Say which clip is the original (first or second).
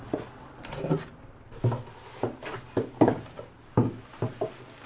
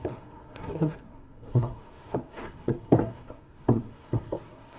first